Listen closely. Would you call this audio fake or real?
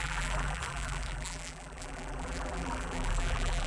fake